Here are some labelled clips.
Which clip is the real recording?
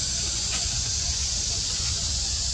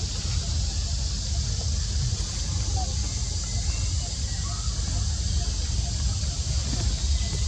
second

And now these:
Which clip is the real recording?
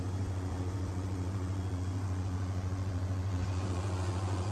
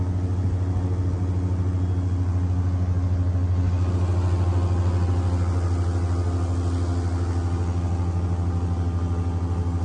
second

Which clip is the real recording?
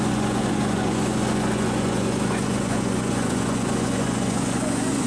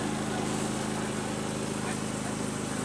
second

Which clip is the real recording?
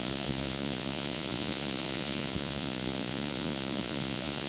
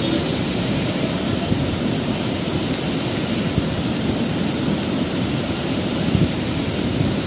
second